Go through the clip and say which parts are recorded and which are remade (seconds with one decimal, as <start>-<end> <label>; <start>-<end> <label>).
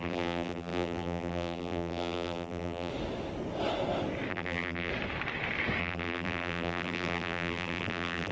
0.0-2.9 remade; 2.9-4.3 recorded; 4.3-4.9 remade; 4.9-5.8 recorded; 5.8-8.3 remade